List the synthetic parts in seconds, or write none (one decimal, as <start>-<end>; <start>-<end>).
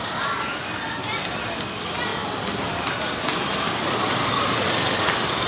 none